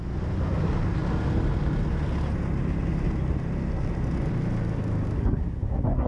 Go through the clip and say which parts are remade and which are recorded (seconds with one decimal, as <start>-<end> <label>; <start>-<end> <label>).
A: 0.0-5.2 recorded; 5.2-6.1 remade